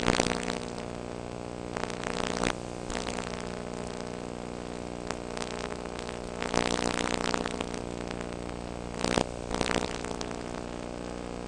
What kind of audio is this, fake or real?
real